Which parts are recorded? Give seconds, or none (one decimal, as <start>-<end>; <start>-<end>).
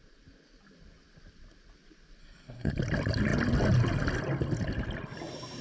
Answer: 0.0-2.2; 2.7-5.6